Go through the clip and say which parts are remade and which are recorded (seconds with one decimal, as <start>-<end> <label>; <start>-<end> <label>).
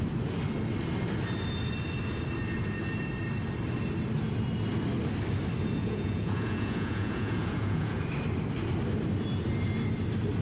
0.0-5.8 recorded; 5.8-8.0 remade; 8.0-10.4 recorded